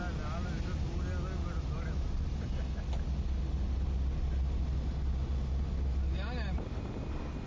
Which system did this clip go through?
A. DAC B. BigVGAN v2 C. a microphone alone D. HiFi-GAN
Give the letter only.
C